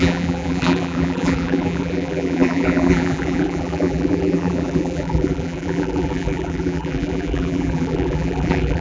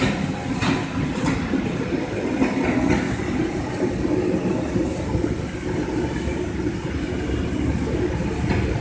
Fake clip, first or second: first